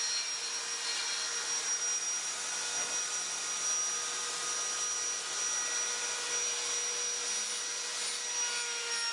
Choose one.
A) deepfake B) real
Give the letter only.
B